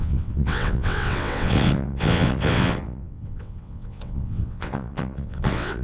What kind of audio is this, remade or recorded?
remade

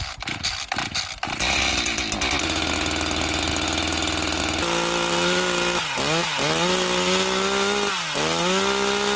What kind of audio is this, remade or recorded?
recorded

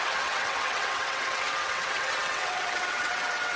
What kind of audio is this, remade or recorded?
remade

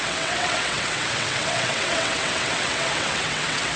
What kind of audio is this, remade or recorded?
remade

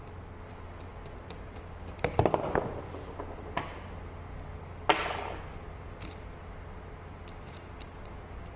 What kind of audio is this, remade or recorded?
recorded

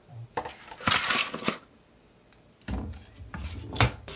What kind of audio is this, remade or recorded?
recorded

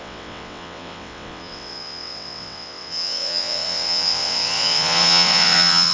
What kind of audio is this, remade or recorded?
remade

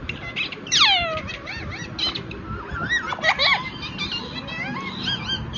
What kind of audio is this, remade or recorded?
recorded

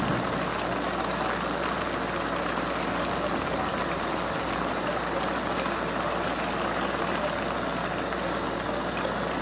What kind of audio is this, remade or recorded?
recorded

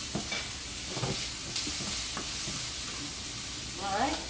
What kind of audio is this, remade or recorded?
recorded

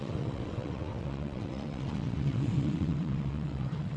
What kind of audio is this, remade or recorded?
remade